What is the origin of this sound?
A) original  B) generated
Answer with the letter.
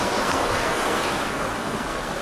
B